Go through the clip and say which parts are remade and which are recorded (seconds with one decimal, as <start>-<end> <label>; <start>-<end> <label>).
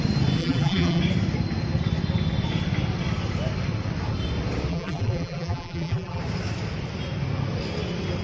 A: 0.0-0.4 recorded; 0.4-1.0 remade; 1.0-4.7 recorded; 4.7-6.2 remade; 6.2-8.2 recorded